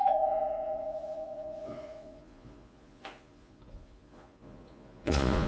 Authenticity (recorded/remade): remade